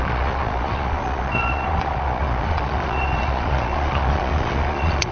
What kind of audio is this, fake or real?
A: fake